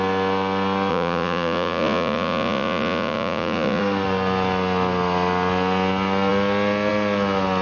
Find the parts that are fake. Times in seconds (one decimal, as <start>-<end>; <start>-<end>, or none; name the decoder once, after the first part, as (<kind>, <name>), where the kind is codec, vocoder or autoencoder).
0.9-3.8 (vocoder, Vocos)